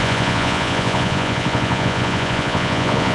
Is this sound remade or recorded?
remade